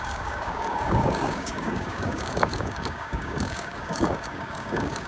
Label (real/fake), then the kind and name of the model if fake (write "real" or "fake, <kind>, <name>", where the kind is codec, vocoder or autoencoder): fake, codec, DAC